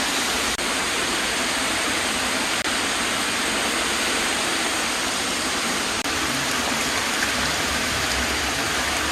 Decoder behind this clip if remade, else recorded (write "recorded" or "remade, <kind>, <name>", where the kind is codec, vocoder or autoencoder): remade, vocoder, BigVGAN v2